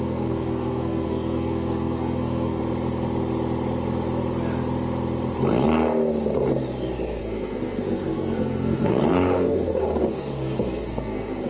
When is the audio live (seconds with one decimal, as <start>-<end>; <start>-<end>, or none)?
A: 2.6-7.2

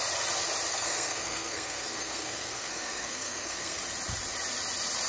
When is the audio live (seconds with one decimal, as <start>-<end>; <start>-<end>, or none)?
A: 0.0-0.7; 3.8-5.1

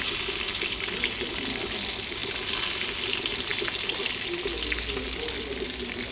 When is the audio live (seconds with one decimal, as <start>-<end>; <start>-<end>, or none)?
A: 0.0-6.1

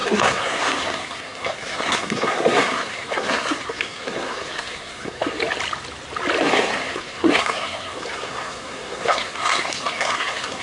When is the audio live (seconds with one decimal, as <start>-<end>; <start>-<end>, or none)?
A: 5.4-6.4

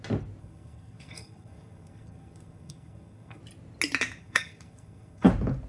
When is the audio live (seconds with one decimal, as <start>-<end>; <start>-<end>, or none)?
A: 0.0-0.4; 3.4-4.2; 5.3-5.7

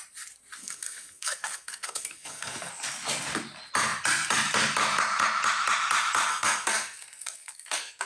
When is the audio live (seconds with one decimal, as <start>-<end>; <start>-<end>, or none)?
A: 0.0-0.6; 2.7-6.3